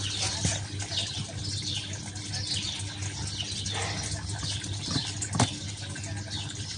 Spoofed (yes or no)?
no